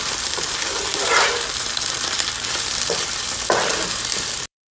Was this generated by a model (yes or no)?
yes